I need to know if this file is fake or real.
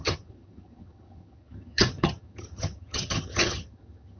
fake